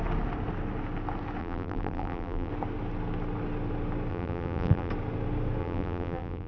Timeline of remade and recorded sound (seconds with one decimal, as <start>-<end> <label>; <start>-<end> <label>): 0.0-1.4 recorded; 1.4-2.5 remade; 2.5-4.1 recorded; 4.1-4.9 remade; 4.9-5.6 recorded; 5.6-6.5 remade